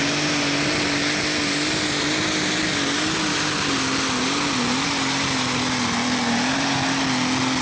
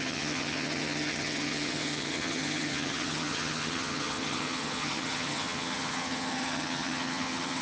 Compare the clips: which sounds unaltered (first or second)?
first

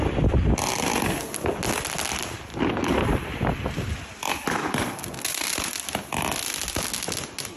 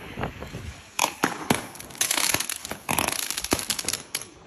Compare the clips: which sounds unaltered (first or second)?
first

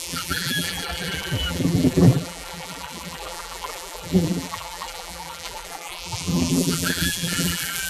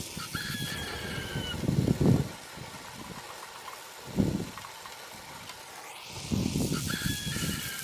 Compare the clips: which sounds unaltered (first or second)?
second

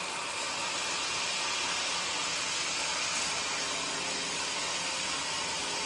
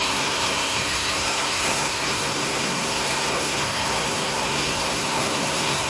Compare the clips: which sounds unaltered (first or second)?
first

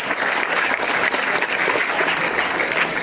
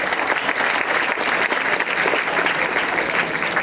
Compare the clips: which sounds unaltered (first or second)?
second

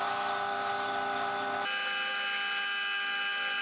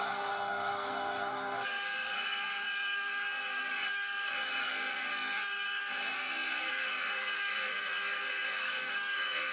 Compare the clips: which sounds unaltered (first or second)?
first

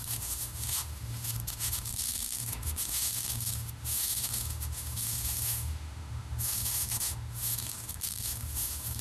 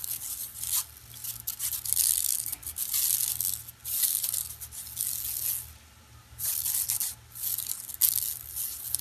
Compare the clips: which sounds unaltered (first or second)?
second